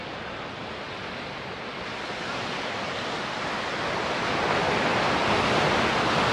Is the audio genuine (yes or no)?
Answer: yes